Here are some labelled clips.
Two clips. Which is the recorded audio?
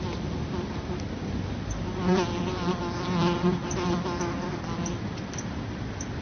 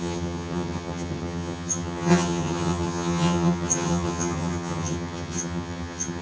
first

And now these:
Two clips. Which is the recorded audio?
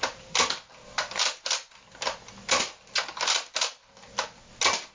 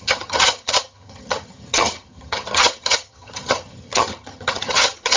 first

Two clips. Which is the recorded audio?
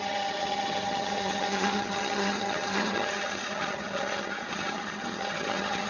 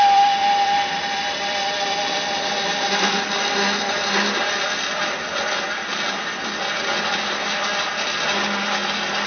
second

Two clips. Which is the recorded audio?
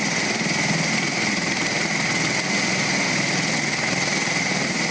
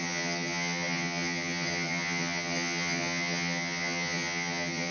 first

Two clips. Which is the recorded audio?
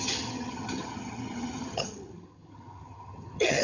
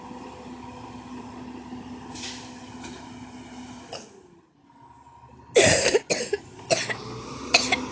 second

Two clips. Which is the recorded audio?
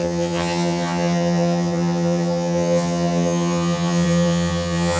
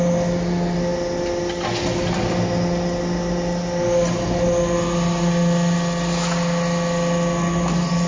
second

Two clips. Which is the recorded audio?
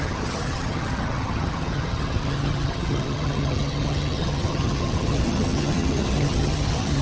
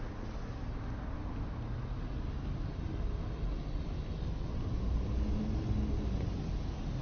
second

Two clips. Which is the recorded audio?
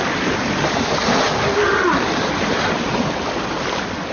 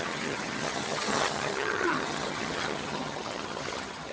first